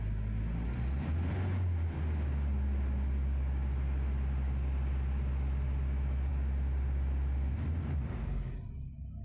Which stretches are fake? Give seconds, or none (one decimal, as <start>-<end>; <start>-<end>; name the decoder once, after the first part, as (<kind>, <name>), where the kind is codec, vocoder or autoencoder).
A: none